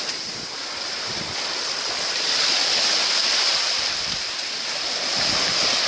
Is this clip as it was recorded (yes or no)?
no